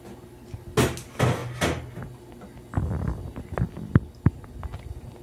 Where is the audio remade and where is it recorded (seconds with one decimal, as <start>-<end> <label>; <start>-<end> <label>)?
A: 0.0-5.2 recorded

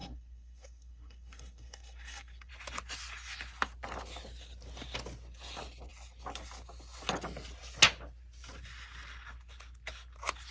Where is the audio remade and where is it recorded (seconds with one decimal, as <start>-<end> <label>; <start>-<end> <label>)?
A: 0.0-2.5 remade; 2.5-10.5 recorded

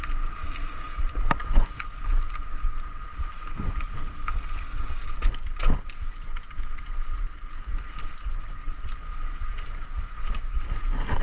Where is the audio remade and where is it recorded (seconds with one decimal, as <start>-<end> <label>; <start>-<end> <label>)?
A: 0.0-11.2 recorded

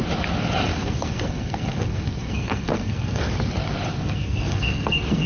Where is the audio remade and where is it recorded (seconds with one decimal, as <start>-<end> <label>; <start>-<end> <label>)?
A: 0.0-0.7 recorded; 0.7-3.3 remade; 3.3-3.9 recorded; 3.9-5.3 remade

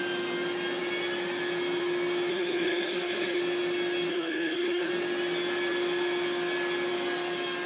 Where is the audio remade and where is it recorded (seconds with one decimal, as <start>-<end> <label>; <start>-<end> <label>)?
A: 0.0-2.3 recorded; 2.3-3.4 remade; 3.4-4.1 recorded; 4.1-4.9 remade; 4.9-7.7 recorded